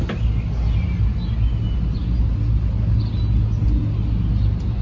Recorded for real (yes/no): yes